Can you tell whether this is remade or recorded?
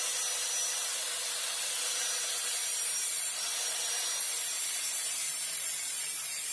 recorded